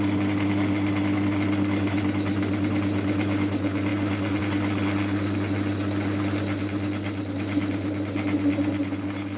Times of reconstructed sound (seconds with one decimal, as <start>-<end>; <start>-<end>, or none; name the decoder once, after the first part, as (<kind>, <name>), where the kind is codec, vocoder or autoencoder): none